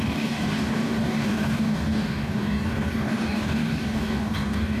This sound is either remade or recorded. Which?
remade